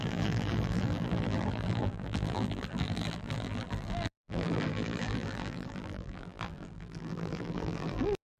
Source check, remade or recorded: remade